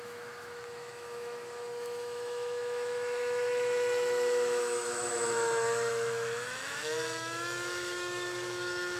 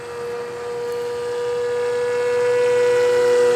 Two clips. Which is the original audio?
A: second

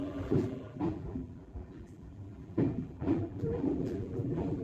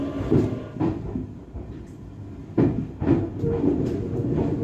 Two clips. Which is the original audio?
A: second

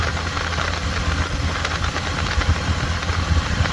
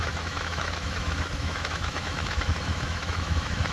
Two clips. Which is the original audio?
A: first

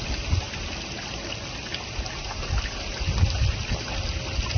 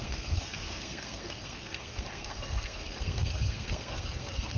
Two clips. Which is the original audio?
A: first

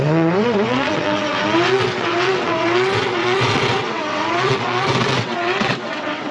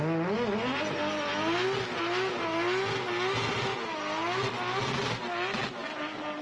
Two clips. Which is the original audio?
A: second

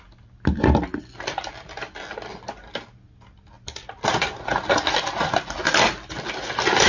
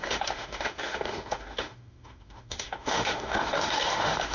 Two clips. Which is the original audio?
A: first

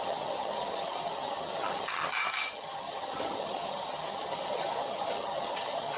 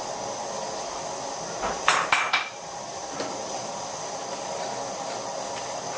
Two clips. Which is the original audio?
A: second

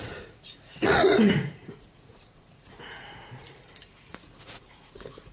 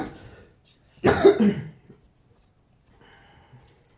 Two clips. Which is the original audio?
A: second